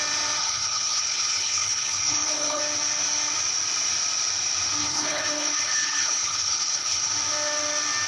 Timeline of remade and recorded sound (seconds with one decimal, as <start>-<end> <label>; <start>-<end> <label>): 0.0-0.4 recorded; 0.4-2.6 remade; 2.6-4.8 recorded; 4.8-7.1 remade; 7.1-8.1 recorded